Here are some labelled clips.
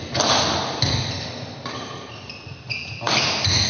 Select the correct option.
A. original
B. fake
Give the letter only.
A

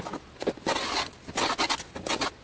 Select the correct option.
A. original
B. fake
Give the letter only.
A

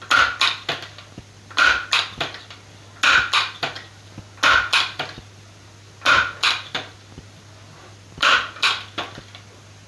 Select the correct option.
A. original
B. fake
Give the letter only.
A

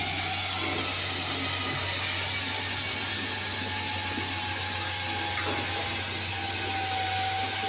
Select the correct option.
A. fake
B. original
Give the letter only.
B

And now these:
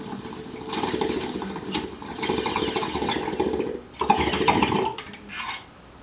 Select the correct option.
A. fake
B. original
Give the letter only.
A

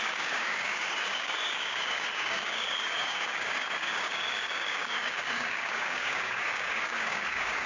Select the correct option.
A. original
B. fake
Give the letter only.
B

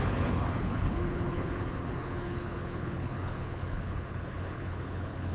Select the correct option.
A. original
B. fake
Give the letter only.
B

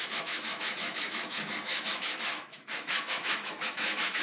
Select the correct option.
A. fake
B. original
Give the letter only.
A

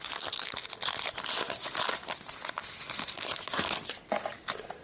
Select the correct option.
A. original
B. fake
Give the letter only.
A